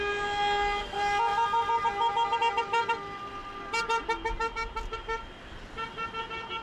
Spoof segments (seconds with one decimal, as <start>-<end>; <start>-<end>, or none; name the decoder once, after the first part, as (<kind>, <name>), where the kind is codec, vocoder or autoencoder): none